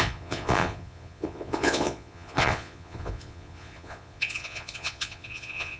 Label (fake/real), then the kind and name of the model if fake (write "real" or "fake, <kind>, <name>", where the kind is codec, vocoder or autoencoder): fake, vocoder, Vocos